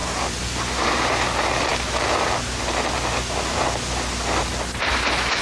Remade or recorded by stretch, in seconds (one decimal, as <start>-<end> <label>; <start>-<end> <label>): 0.0-5.4 recorded